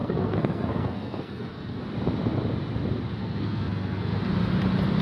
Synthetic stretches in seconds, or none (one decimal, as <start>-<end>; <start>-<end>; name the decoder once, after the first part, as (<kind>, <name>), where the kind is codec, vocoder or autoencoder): 0.0-1.8 (codec, SNAC); 3.2-4.2